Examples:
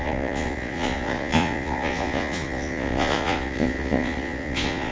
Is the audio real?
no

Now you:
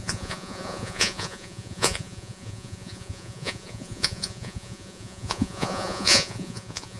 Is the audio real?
no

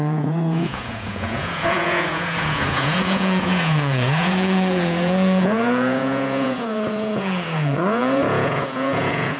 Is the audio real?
no